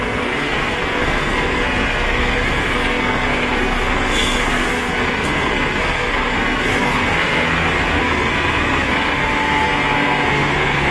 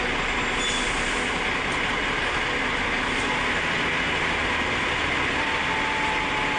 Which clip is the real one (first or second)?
second